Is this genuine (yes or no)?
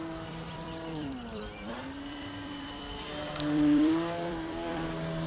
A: no